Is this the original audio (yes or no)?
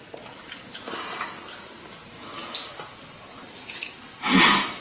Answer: yes